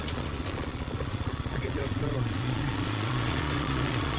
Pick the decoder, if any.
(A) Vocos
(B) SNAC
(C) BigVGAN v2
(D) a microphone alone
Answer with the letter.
A